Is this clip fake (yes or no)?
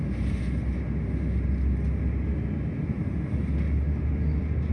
no